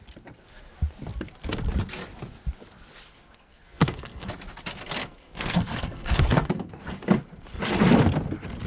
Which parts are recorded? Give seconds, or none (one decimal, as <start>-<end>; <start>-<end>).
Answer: 0.0-3.1; 4.3-5.0; 6.8-8.7